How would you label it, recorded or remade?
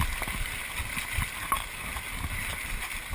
recorded